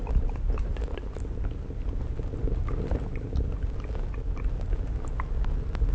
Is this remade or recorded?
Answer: recorded